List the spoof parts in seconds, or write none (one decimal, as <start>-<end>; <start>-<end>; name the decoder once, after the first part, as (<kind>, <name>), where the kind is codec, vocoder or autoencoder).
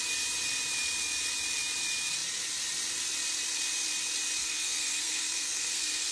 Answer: 4.4-6.1 (codec, SNAC)